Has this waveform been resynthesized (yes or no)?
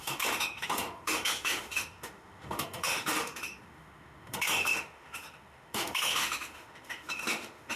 yes